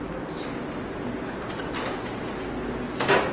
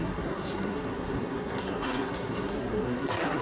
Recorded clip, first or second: first